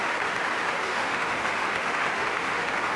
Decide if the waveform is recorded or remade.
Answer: remade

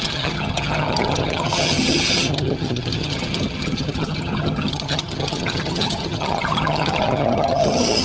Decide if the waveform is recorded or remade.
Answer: remade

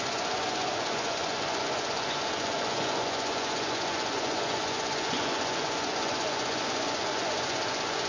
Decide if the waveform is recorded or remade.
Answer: remade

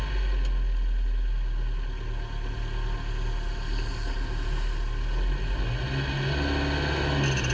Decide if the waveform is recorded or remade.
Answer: recorded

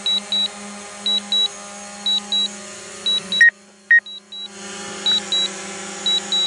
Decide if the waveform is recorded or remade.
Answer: recorded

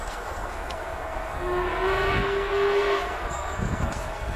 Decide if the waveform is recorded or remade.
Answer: remade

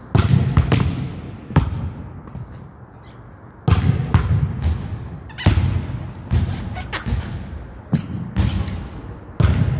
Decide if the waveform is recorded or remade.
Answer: recorded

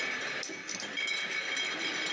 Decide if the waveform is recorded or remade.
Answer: recorded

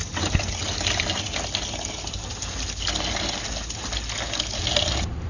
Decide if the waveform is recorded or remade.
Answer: recorded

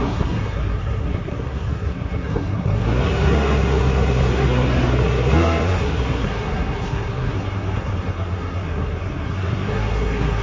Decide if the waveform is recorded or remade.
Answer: remade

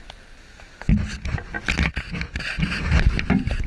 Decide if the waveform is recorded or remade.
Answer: recorded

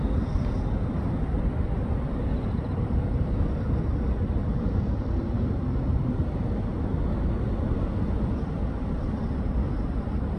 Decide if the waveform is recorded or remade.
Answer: recorded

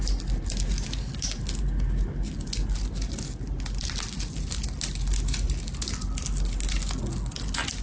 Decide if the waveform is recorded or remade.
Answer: recorded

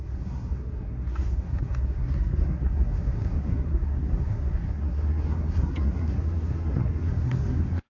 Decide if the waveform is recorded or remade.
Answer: remade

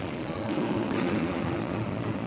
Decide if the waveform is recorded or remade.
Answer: remade